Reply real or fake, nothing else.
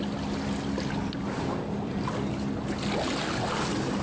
real